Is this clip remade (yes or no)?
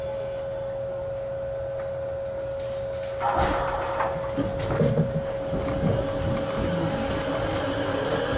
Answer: no